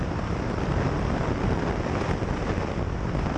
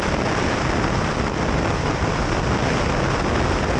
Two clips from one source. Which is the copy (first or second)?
first